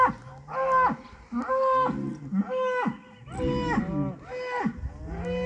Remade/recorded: recorded